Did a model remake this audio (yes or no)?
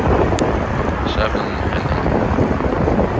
no